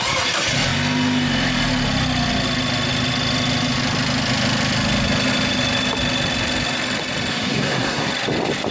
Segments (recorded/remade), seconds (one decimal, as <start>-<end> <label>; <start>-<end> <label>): 0.0-7.3 recorded; 7.3-8.1 remade; 8.1-8.7 recorded